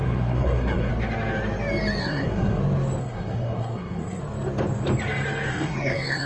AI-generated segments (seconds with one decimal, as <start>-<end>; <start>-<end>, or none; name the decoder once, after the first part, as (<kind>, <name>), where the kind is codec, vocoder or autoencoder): 0.0-0.9 (codec, SNAC); 2.0-2.6; 3.0-4.2; 5.5-6.3